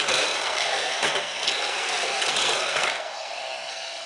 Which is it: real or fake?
fake